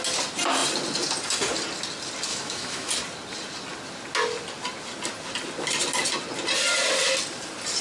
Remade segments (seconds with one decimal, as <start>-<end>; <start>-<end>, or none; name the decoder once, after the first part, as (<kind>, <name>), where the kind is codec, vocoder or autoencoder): 2.3-2.9 (autoencoder, DAC-VAE)